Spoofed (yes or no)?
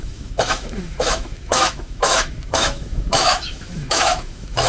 yes